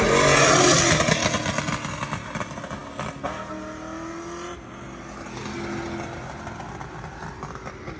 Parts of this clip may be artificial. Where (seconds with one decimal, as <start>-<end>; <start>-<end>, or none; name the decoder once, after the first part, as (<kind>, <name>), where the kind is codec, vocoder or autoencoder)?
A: none